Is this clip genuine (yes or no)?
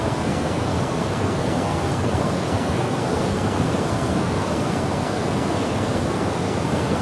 no